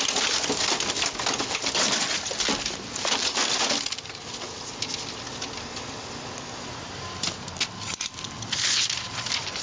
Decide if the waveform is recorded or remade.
recorded